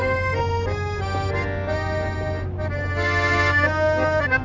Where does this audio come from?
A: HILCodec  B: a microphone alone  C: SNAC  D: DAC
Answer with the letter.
B